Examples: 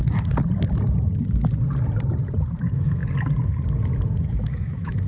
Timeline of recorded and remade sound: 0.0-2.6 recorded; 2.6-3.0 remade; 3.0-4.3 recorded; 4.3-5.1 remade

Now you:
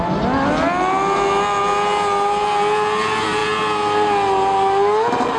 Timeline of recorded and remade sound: 0.0-5.4 recorded

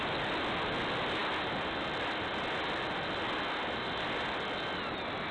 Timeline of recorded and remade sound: 0.0-5.3 recorded

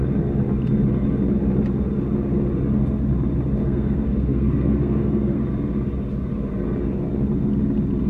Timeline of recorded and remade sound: 0.0-3.6 recorded; 3.6-5.4 remade; 5.4-8.1 recorded

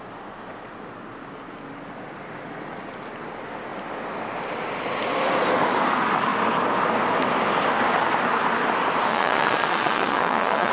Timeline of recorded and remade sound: 0.0-9.1 recorded; 9.1-10.7 remade

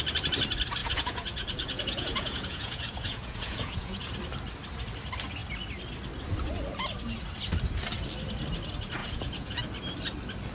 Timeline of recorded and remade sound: 0.0-0.8 recorded; 0.8-4.1 remade; 4.1-9.0 recorded; 9.0-9.6 remade; 9.6-10.5 recorded

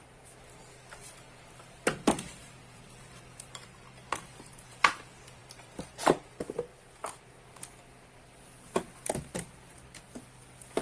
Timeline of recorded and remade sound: 0.0-2.4 recorded; 2.4-4.8 remade; 4.8-5.4 recorded; 5.4-6.2 remade; 6.2-10.8 recorded

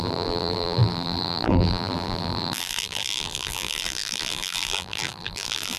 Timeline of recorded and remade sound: 0.0-5.8 remade